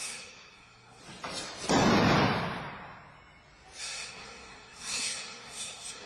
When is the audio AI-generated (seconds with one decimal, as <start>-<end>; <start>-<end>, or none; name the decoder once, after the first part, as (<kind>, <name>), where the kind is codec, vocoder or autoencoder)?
0.0-1.0 (codec, SNAC); 3.8-6.1